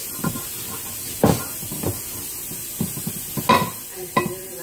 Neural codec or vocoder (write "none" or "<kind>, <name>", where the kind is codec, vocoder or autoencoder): none